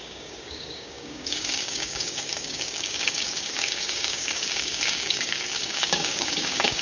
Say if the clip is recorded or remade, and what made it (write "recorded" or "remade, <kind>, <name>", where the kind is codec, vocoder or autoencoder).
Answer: remade, codec, DAC